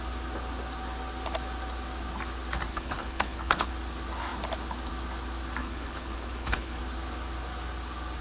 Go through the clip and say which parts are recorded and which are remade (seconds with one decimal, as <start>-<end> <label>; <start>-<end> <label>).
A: 0.0-2.7 recorded; 2.7-3.7 remade; 3.7-5.6 recorded; 5.6-6.8 remade; 6.8-8.2 recorded